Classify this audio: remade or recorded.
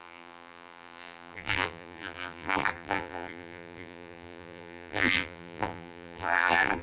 remade